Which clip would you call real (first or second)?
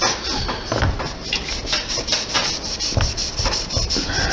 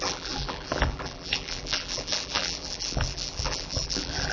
first